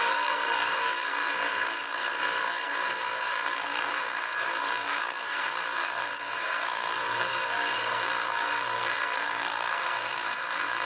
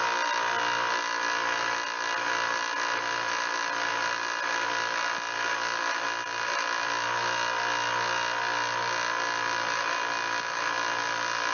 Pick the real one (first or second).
second